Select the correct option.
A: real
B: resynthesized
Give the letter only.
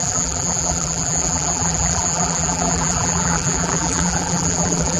B